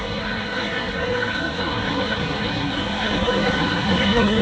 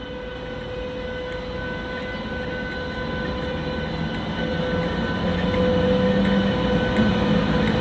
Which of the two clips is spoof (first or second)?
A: first